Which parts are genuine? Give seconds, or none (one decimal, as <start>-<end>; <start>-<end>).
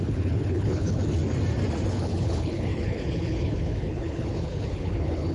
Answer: 1.2-1.9